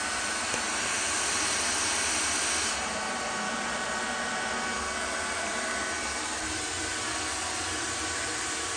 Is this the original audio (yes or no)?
yes